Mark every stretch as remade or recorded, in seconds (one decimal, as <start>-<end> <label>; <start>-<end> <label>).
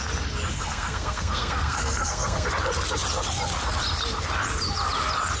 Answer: 0.0-0.5 recorded; 0.5-2.5 remade; 2.5-5.4 recorded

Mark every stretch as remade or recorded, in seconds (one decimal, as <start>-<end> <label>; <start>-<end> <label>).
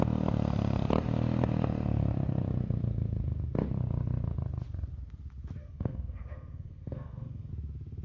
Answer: 0.0-5.6 recorded; 5.6-7.5 remade; 7.5-8.0 recorded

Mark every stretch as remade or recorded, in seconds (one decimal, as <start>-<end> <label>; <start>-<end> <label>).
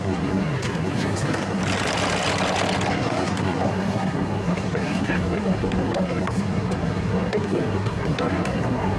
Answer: 0.0-1.6 remade; 1.6-2.9 recorded; 2.9-9.0 remade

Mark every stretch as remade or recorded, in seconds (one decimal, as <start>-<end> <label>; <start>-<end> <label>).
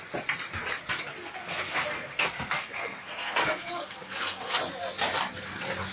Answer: 0.0-1.2 recorded; 1.2-4.6 remade; 4.6-5.9 recorded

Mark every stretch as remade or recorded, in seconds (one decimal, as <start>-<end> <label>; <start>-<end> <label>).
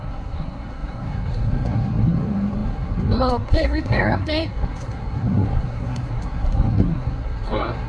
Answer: 0.0-7.9 remade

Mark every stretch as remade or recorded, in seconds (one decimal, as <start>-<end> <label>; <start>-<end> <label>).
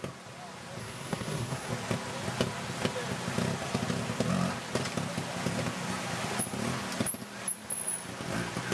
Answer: 0.0-0.8 recorded; 0.8-1.7 remade; 1.7-8.7 recorded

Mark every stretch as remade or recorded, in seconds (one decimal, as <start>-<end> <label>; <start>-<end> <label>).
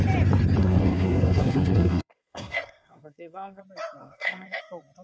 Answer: 0.0-0.6 recorded; 0.6-3.6 remade; 3.6-4.0 recorded; 4.0-4.6 remade; 4.6-5.0 recorded